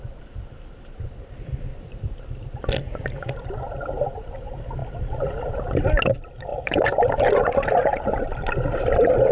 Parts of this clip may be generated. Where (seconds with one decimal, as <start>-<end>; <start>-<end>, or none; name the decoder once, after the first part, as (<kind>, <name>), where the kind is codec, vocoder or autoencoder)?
6.5-8.1 (vocoder, BigVGAN v2)